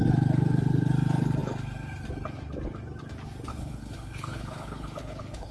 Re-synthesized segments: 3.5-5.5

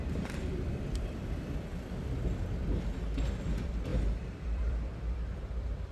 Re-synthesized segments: 0.0-1.7; 3.4-5.9